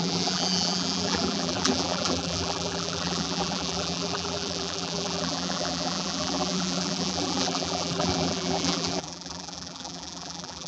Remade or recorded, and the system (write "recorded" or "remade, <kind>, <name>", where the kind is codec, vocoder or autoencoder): remade, vocoder, BigVGAN v2